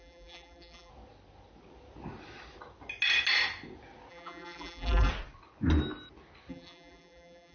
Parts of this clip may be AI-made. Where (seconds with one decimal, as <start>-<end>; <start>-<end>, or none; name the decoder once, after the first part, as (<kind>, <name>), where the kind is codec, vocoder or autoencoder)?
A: 0.0-0.9 (vocoder, BigVGAN v2); 4.1-5.1; 6.5-7.5